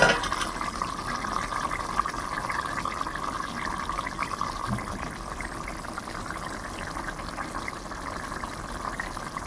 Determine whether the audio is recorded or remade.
recorded